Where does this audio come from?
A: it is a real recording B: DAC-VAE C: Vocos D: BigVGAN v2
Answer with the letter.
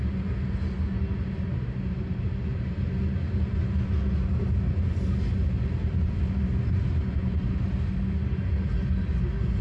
A